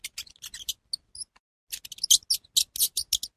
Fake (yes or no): no